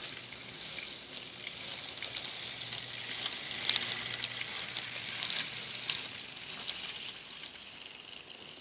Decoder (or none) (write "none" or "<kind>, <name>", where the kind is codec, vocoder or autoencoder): none